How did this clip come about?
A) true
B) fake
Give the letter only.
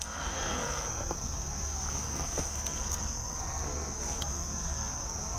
B